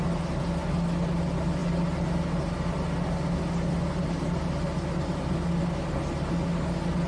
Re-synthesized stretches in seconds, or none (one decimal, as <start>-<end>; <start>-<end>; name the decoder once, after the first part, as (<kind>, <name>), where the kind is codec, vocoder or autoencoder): none